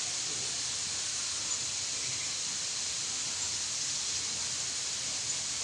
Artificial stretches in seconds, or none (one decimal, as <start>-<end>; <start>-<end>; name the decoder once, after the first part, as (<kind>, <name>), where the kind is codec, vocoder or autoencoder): none